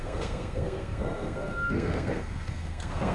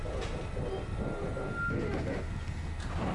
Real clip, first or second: second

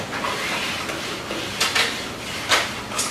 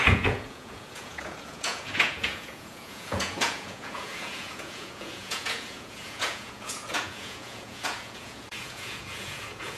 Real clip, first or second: first